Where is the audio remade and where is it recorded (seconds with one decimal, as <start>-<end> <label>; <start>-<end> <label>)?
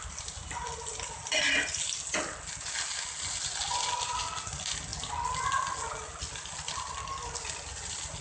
0.0-8.2 recorded